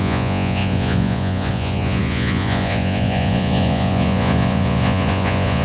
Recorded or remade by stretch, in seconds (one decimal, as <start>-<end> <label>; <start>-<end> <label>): 0.0-5.6 remade